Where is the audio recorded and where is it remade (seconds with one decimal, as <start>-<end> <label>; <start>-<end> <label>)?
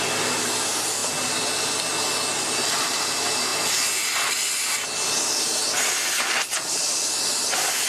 0.0-7.9 recorded